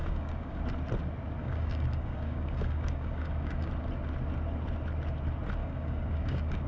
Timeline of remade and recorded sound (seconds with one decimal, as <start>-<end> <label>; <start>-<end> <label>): 0.0-0.6 remade; 0.6-1.4 recorded; 1.4-3.7 remade; 3.7-5.6 recorded; 5.6-6.7 remade